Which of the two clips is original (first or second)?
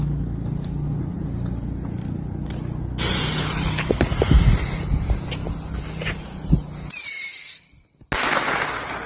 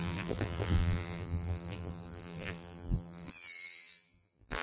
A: first